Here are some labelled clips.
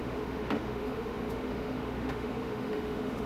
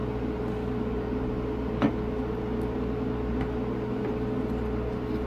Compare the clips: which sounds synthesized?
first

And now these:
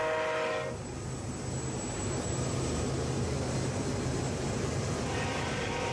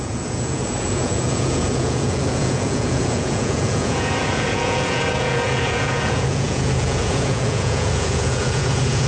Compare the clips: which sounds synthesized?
second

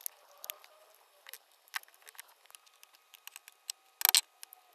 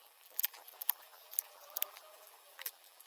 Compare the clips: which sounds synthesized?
second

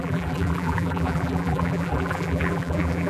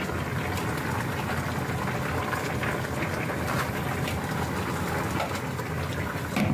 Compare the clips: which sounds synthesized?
first